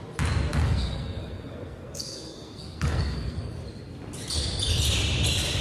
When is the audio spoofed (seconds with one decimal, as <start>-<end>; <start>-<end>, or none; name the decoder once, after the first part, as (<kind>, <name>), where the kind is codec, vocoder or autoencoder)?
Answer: 0.5-3.6 (codec, SNAC)